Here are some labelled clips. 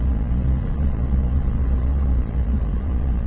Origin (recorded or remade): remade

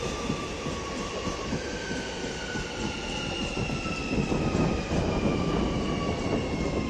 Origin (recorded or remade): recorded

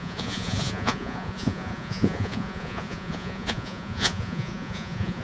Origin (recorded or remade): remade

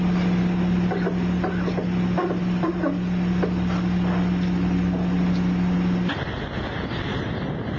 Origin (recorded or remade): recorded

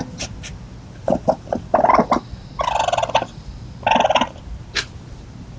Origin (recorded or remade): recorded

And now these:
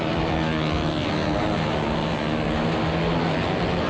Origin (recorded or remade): recorded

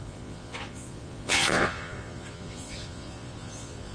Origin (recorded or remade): remade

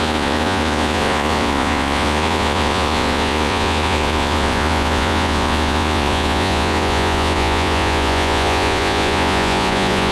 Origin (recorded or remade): remade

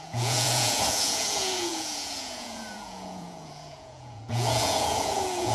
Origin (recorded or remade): remade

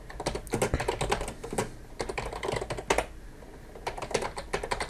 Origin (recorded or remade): recorded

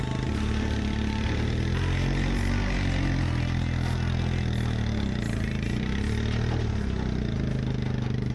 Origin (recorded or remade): recorded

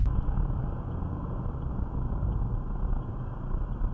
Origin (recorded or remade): recorded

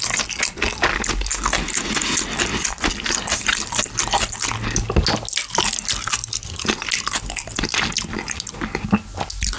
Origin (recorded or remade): recorded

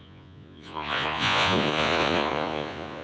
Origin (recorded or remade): remade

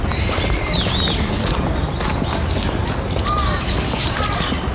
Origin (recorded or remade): recorded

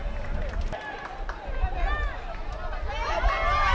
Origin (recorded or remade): recorded